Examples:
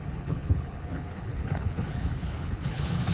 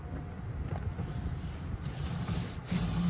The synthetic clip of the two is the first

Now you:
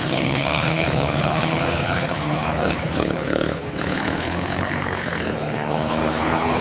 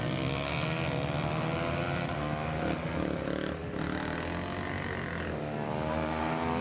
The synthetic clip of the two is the first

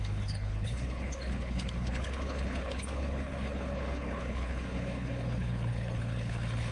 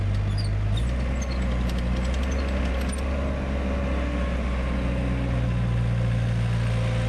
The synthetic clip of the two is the first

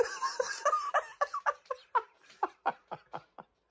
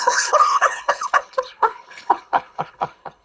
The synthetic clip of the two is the second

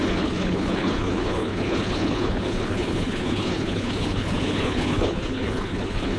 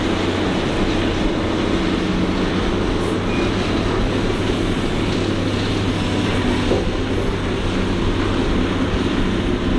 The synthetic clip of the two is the first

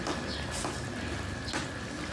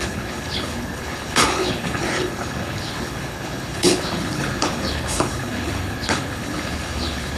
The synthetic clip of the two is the second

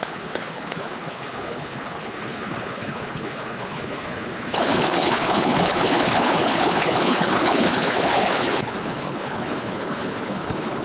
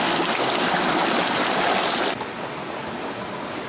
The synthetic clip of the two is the first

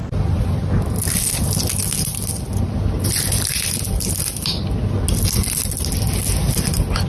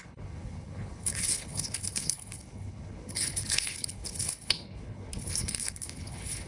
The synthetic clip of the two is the second